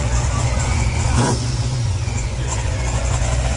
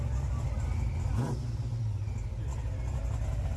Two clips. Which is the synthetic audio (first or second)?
first